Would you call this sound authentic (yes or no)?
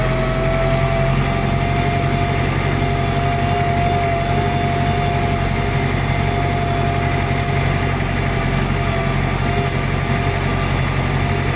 yes